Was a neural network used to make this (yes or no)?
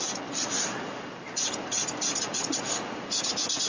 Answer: no